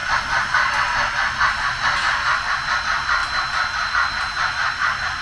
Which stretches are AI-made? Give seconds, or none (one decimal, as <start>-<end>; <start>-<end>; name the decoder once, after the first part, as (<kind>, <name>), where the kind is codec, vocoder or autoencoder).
2.8-3.2 (vocoder, BigVGAN v2); 3.9-5.2